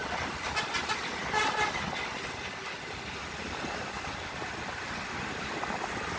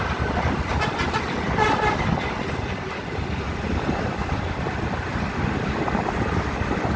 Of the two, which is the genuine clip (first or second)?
first